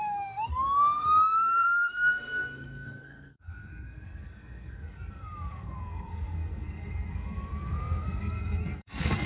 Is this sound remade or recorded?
remade